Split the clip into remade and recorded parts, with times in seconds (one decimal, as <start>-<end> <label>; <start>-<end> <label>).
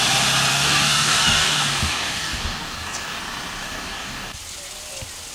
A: 0.0-0.5 recorded; 0.5-3.2 remade; 3.2-3.6 recorded; 3.6-4.4 remade; 4.4-5.3 recorded